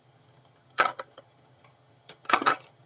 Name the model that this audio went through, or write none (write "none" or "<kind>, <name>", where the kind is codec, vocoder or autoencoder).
vocoder, HiFi-GAN